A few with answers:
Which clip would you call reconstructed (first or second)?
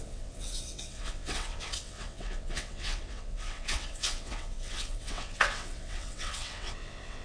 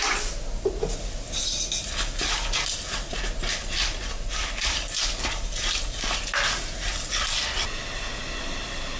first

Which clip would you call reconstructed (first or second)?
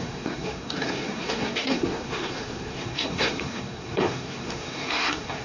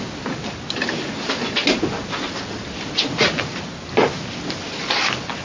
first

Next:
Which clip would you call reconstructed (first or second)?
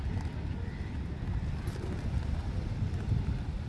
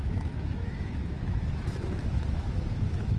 second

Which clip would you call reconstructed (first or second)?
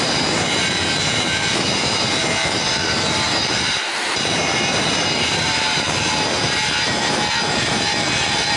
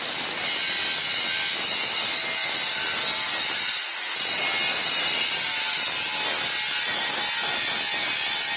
first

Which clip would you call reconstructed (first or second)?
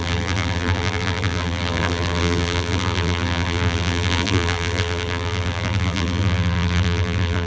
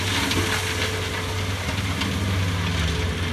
first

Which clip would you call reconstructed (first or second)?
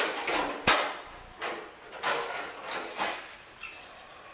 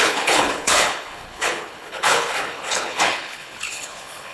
second